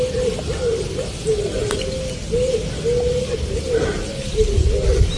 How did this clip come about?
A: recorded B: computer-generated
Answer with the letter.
A